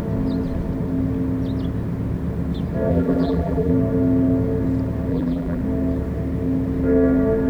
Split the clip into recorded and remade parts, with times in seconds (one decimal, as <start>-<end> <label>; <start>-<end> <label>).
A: 0.0-2.9 recorded; 2.9-3.7 remade; 3.7-5.1 recorded; 5.1-5.6 remade; 5.6-7.5 recorded

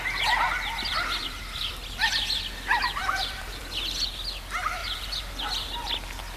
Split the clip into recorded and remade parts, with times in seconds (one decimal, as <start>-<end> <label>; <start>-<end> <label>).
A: 0.0-1.2 recorded; 1.2-1.7 remade; 1.7-3.0 recorded; 3.0-3.6 remade; 3.6-4.8 recorded; 4.8-5.4 remade; 5.4-6.4 recorded

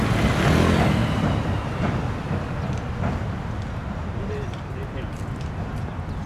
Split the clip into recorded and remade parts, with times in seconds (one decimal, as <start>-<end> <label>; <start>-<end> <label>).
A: 0.0-1.0 recorded; 1.0-1.9 remade; 1.9-3.8 recorded; 3.8-5.2 remade; 5.2-6.3 recorded

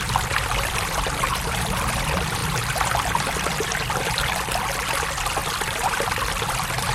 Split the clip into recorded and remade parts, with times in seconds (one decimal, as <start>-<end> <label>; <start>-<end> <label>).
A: 0.0-6.9 remade

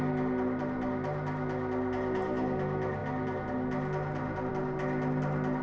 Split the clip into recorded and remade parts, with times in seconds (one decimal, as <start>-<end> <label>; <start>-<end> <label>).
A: 0.0-5.6 recorded

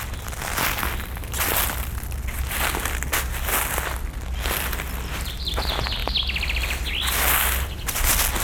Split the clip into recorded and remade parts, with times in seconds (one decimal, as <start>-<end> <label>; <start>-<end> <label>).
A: 0.0-8.4 recorded

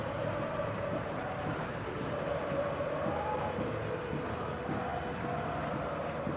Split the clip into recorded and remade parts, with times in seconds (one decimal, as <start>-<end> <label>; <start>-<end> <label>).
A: 0.0-3.7 remade; 3.7-6.4 recorded

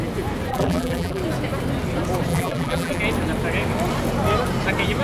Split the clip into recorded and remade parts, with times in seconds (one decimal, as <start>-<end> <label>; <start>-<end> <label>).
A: 0.0-0.5 recorded; 0.5-1.2 remade; 1.2-2.3 recorded; 2.3-3.0 remade; 3.0-5.0 recorded